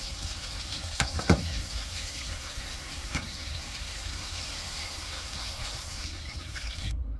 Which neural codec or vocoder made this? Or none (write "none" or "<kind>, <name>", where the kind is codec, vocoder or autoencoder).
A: codec, SNAC